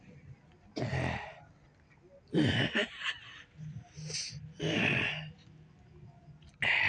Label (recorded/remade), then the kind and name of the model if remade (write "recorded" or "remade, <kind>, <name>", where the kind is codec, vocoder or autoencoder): recorded